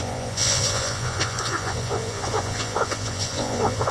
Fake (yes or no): yes